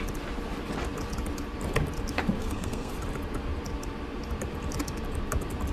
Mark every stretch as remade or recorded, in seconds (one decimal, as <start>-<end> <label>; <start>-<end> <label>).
0.0-2.4 recorded; 2.4-2.9 remade; 2.9-5.7 recorded